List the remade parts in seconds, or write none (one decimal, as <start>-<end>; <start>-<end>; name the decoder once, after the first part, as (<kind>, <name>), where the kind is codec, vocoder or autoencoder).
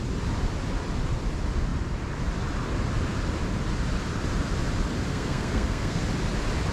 5.1-6.0 (codec, SNAC)